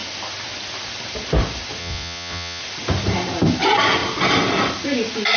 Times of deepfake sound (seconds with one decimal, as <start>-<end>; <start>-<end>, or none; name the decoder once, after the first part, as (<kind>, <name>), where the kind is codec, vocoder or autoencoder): 1.8-2.6 (vocoder, Vocos)